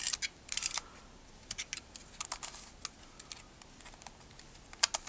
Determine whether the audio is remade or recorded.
recorded